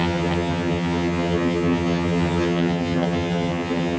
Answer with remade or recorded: remade